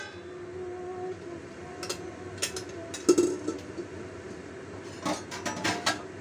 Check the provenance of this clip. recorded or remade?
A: recorded